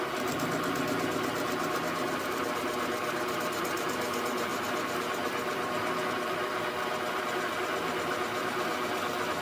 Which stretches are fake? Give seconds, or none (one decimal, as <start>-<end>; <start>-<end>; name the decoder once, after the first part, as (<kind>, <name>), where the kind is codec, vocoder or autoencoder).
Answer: none

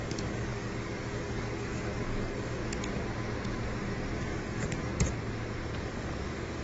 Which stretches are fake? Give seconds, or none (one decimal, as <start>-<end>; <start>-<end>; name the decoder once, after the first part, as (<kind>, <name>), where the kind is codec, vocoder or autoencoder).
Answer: 0.0-2.6 (codec, DAC); 4.2-4.9; 5.8-6.6

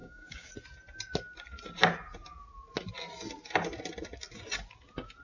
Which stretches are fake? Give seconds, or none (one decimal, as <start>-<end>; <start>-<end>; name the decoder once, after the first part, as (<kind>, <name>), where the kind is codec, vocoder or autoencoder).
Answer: 0.0-0.5 (codec, DAC)

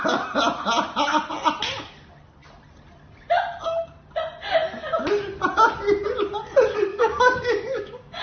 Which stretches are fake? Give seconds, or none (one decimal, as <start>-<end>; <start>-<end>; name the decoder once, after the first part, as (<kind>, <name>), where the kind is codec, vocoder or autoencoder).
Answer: 6.9-8.2 (codec, DAC)

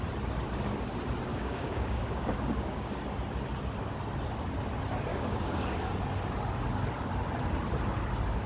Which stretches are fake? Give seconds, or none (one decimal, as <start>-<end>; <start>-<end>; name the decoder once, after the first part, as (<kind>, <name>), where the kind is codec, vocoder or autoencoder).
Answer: 1.3-2.9 (codec, DAC); 5.1-5.9

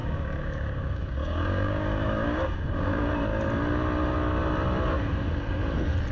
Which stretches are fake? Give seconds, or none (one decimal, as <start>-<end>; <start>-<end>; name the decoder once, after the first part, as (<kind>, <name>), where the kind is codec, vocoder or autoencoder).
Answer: 0.0-3.1 (codec, DAC)